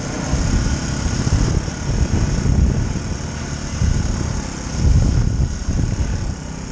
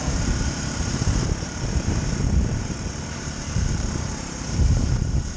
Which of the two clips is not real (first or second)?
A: second